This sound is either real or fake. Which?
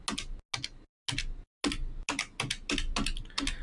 real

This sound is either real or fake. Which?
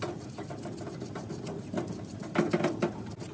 real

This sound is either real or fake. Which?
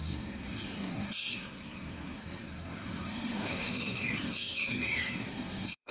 fake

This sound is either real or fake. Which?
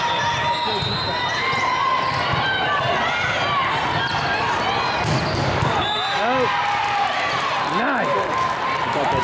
real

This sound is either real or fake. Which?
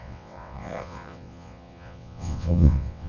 fake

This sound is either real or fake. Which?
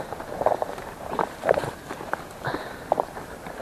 fake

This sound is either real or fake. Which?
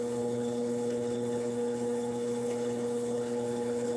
fake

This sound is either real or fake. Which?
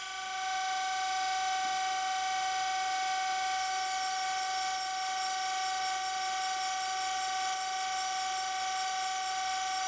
real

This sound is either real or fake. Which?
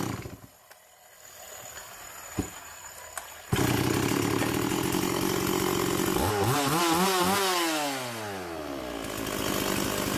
real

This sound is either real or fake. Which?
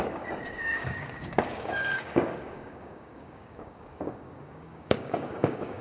fake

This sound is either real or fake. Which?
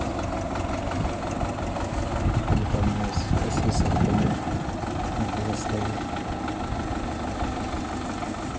real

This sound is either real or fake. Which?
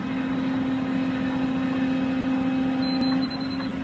real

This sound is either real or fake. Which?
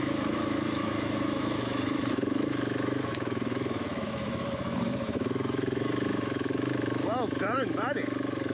fake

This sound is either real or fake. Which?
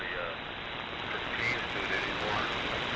real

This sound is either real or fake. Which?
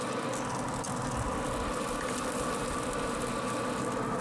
real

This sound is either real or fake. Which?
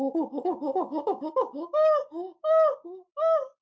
fake